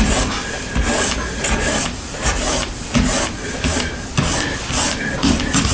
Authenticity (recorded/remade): recorded